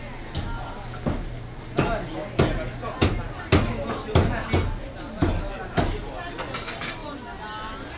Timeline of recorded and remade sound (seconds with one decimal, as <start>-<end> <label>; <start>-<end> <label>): 0.0-8.0 recorded